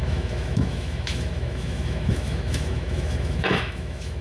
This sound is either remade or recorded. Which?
remade